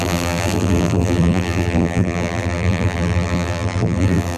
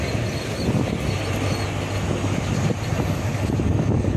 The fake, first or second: first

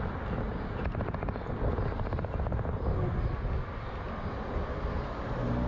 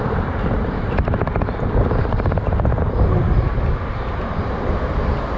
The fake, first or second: second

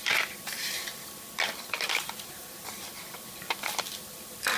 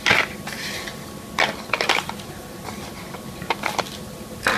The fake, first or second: first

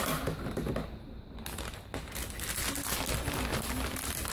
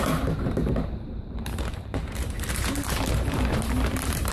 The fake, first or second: second